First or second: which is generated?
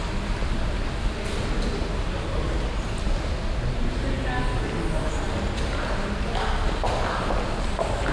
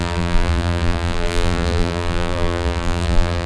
second